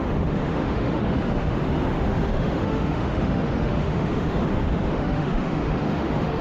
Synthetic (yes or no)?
yes